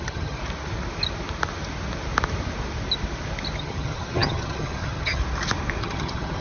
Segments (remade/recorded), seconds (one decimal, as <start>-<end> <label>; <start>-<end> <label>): 0.0-0.4 remade; 0.4-3.6 recorded; 3.6-5.2 remade; 5.2-5.8 recorded; 5.8-6.4 remade